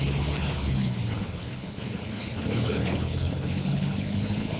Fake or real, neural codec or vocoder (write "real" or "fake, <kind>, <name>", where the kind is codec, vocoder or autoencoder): fake, codec, HILCodec